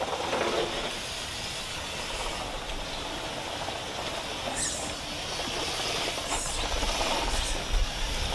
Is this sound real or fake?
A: real